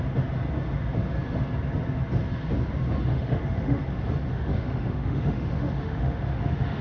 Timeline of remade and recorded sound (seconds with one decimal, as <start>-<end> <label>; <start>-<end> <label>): 0.0-3.1 recorded; 3.1-3.8 remade; 3.8-4.3 recorded; 4.3-6.8 remade